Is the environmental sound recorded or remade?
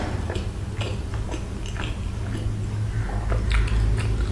recorded